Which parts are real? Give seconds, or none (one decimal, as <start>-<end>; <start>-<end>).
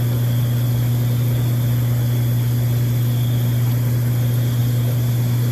0.0-5.5